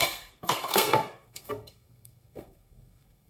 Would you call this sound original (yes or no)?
no